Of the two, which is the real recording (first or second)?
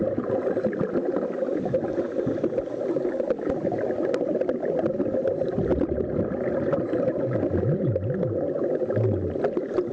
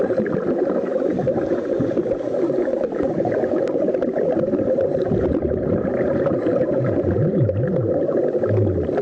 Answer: first